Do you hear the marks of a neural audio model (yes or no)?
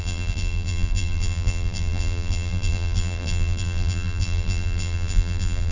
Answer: yes